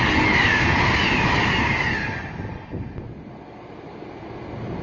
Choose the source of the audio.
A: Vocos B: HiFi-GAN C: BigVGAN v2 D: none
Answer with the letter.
D